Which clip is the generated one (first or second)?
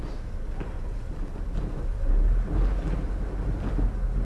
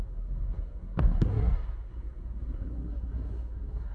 second